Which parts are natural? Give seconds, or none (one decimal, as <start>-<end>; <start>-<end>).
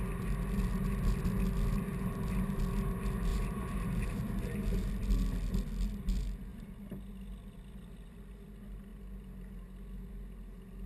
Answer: 0.0-1.9; 2.6-3.3; 4.9-10.9